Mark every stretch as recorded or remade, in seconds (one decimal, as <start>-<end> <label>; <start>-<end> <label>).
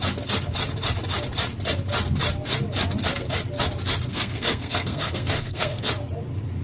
0.0-4.1 recorded; 4.1-5.9 remade; 5.9-6.6 recorded